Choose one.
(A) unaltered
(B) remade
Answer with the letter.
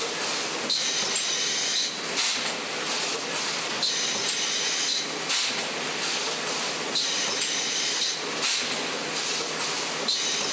A